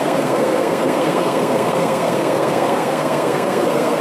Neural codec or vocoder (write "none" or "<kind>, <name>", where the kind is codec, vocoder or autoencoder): codec, SNAC